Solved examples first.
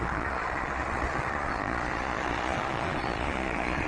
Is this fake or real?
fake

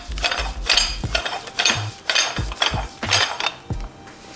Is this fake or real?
real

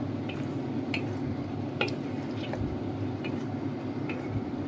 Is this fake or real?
real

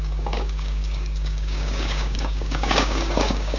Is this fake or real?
fake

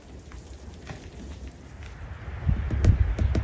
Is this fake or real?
real